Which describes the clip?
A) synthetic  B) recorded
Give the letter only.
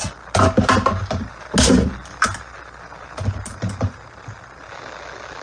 B